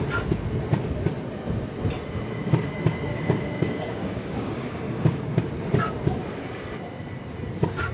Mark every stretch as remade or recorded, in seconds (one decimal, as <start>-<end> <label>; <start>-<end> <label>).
0.0-3.1 recorded; 3.1-5.4 remade; 5.4-7.9 recorded